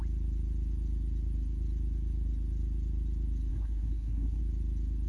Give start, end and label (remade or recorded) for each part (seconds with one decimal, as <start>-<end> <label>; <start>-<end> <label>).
0.0-3.5 recorded; 3.5-4.4 remade; 4.4-5.1 recorded